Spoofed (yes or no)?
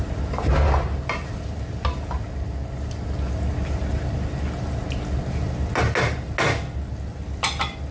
no